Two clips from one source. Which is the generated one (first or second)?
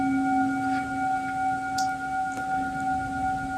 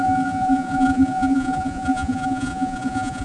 second